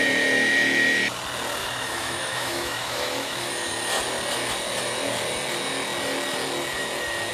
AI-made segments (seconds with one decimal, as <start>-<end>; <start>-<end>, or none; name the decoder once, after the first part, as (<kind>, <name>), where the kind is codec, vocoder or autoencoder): 1.6-3.5 (autoencoder, DAC-VAE)